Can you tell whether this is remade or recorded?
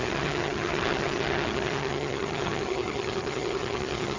remade